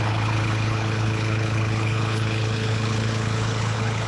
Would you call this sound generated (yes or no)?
yes